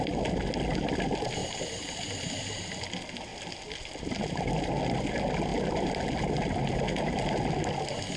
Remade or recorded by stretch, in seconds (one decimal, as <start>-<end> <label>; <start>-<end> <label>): 0.0-1.4 recorded; 1.4-2.7 remade; 2.7-3.3 recorded; 3.3-4.3 remade; 4.3-5.5 recorded; 5.5-6.8 remade; 6.8-8.2 recorded